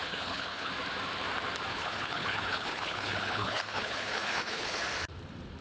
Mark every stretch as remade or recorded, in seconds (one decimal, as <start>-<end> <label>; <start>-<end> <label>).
0.0-0.7 remade; 0.7-1.7 recorded; 1.7-4.8 remade; 4.8-5.6 recorded